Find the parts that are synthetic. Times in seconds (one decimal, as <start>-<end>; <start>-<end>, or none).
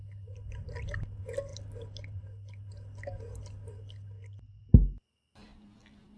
1.5-4.4